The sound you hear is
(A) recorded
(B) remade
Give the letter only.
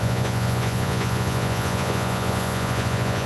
B